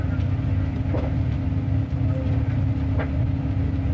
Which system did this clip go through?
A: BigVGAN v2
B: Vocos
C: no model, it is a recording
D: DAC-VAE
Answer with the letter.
C